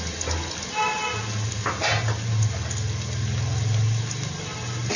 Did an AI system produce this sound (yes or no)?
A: no